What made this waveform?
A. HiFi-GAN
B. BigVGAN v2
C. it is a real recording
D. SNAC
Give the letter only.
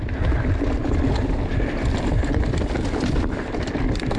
C